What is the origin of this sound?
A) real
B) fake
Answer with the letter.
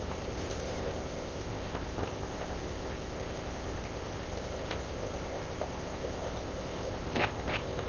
B